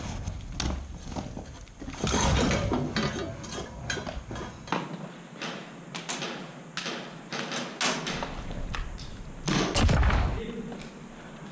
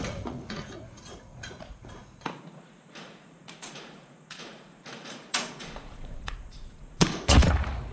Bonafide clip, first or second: first